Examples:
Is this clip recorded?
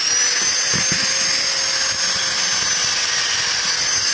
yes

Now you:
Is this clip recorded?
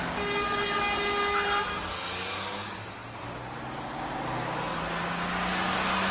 yes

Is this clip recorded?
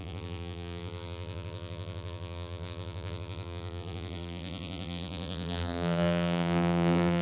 no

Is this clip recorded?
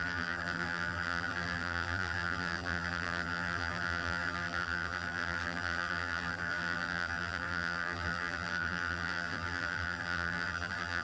no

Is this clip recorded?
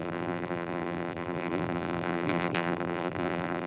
no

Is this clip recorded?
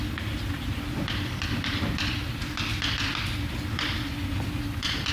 no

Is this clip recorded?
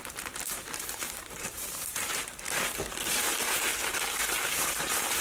no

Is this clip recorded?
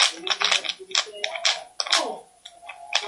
yes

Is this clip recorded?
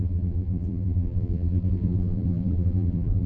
no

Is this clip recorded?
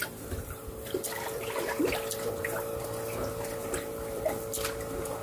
no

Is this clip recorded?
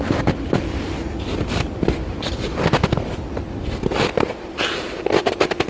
yes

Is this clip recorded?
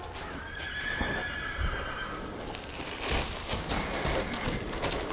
yes